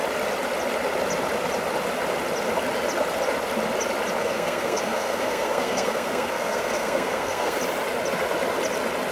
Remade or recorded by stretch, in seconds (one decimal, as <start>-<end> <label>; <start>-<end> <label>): 0.0-4.2 recorded; 4.2-7.6 remade; 7.6-9.1 recorded